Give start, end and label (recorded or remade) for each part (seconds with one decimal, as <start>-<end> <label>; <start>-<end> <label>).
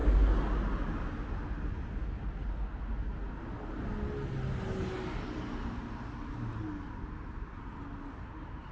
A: 0.0-8.7 recorded